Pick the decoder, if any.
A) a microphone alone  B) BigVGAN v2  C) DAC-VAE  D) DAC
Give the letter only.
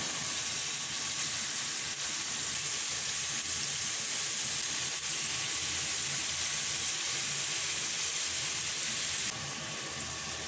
A